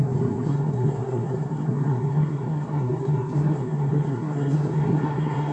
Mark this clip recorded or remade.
remade